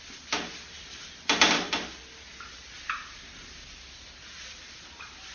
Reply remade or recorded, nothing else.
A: recorded